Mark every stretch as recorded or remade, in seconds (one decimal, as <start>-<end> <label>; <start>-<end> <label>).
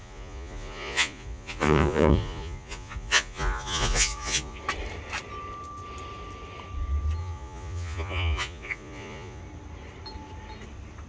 0.0-4.6 remade; 4.6-7.2 recorded; 7.2-9.4 remade; 9.4-11.1 recorded